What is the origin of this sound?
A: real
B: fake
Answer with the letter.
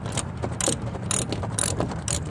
A